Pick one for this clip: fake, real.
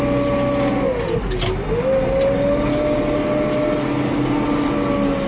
real